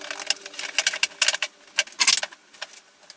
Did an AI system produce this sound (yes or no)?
no